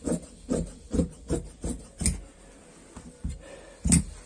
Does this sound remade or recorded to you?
recorded